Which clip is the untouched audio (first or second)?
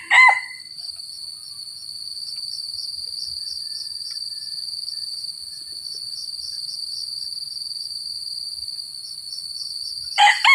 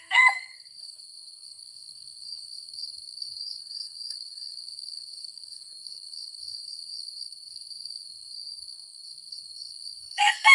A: first